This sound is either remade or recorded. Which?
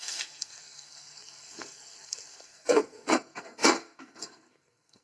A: remade